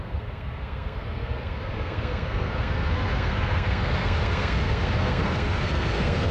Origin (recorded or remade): remade